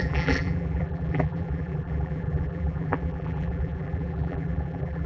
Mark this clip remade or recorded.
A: remade